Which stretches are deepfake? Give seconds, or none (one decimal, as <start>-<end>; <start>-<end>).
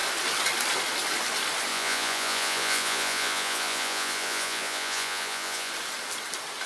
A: 1.7-5.7